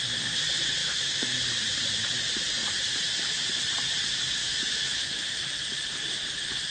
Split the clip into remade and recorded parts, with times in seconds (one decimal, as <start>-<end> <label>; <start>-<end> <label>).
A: 0.0-0.8 recorded; 0.8-1.4 remade; 1.4-4.4 recorded; 4.4-5.4 remade; 5.4-6.7 recorded